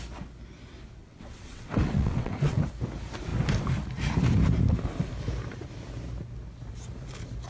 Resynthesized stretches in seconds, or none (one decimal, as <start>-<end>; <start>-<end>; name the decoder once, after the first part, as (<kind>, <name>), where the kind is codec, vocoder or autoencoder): 1.0-2.6 (vocoder, WaveNeXt)